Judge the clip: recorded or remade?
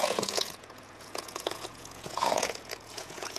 remade